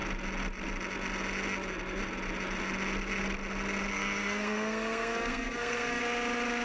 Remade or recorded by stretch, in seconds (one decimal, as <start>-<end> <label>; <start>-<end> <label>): 0.0-3.9 recorded; 3.9-6.0 remade; 6.0-6.6 recorded